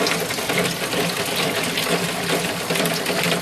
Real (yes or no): yes